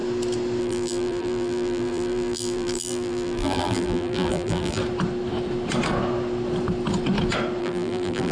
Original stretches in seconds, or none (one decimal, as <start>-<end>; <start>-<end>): 0.0-0.6; 4.8-7.6